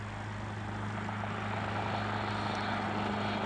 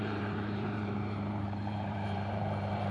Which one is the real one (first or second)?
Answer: first